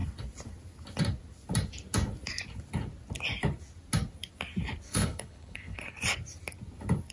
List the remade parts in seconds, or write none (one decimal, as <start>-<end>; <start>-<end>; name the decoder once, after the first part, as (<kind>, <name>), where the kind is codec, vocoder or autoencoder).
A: 4.9-6.0 (codec, HILCodec)